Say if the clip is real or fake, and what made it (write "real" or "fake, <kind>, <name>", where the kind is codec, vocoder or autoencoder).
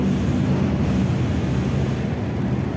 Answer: real